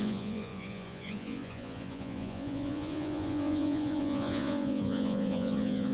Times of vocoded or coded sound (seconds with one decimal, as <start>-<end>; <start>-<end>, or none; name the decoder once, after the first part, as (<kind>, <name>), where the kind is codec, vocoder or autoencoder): 0.0-5.9 (vocoder, Vocos)